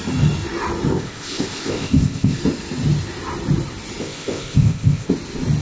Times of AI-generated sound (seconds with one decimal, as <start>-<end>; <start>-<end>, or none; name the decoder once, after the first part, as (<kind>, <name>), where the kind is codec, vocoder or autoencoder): 0.9-2.4 (codec, ZipCodec); 4.0-5.1